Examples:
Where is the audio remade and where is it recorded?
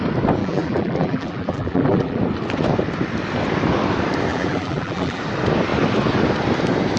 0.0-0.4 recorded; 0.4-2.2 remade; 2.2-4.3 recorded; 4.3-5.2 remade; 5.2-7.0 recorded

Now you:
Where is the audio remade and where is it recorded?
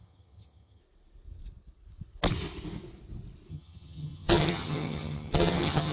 0.0-0.8 remade; 0.8-3.5 recorded; 3.5-5.9 remade